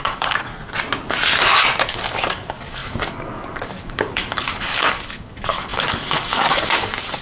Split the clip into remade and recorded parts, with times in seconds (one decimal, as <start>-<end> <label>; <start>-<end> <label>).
0.0-0.5 remade; 0.5-1.9 recorded; 1.9-7.2 remade